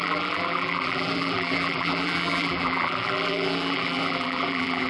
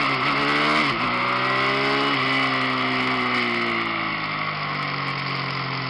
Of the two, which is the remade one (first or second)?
first